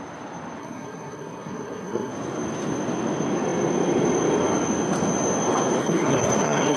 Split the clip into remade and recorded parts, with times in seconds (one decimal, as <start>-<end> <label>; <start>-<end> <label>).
0.0-0.6 recorded; 0.6-2.1 remade; 2.1-5.8 recorded; 5.8-6.8 remade